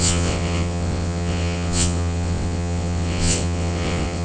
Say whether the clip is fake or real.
fake